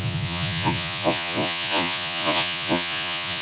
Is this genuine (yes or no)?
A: no